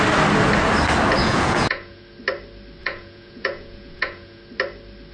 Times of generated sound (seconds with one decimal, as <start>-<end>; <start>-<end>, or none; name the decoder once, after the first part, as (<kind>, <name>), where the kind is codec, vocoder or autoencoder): 1.2-2.0 (vocoder, Vocos); 2.8-4.4